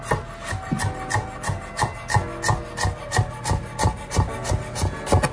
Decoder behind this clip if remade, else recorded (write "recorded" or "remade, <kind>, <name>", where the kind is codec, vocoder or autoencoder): recorded